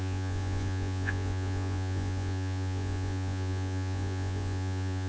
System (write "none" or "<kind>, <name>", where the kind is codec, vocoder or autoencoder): vocoder, Vocos